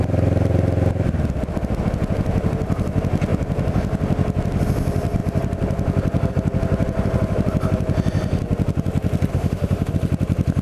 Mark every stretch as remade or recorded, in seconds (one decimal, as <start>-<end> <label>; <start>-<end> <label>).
0.0-9.3 recorded; 9.3-9.9 remade; 9.9-10.6 recorded